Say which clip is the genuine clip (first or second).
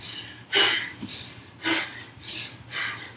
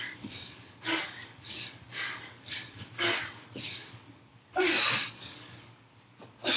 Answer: first